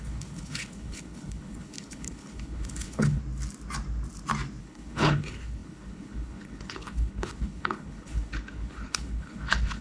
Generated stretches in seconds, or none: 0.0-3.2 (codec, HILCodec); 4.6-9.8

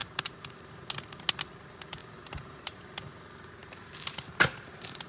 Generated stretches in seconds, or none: 0.0-0.6 (vocoder, BigVGAN v2); 2.0-2.8; 3.6-5.1

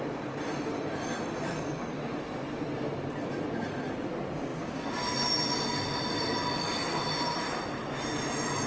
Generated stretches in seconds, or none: none

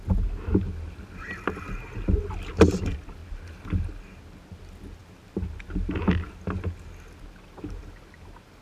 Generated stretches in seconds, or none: none

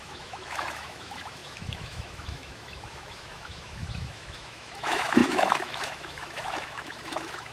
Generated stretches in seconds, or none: 0.0-7.5 (autoencoder, DAC-VAE)

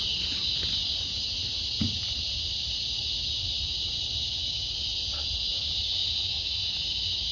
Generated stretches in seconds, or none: none